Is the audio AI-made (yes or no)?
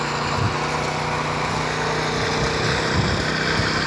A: no